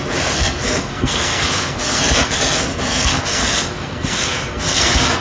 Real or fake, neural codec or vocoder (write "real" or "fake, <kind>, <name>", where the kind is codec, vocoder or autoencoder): fake, codec, SNAC